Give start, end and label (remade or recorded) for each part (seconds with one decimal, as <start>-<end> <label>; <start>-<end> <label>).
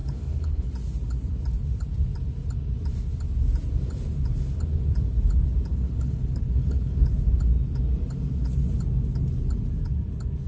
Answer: 0.0-0.7 remade; 0.7-5.7 recorded; 5.7-7.1 remade; 7.1-10.5 recorded